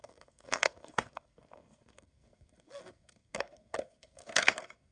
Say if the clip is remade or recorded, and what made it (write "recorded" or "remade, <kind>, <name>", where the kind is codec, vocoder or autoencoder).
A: remade, codec, SNAC